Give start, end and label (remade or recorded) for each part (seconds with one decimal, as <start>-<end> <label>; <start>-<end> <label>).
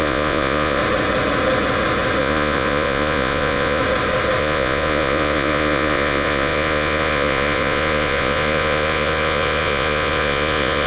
0.0-0.8 remade; 0.8-2.2 recorded; 2.2-3.8 remade; 3.8-4.4 recorded; 4.4-10.9 remade